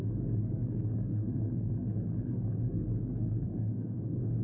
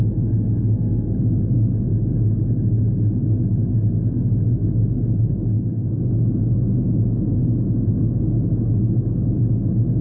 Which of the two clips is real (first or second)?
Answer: second